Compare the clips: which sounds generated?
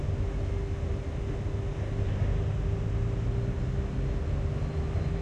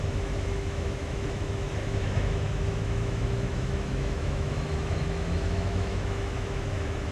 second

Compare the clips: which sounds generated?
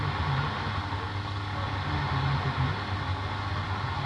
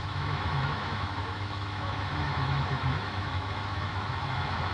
second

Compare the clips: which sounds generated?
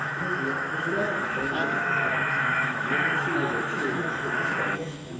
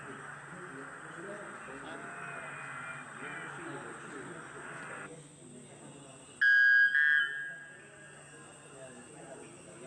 first